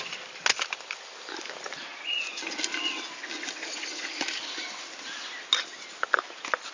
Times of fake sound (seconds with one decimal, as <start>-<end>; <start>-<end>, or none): none